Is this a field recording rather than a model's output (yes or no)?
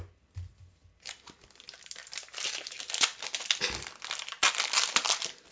yes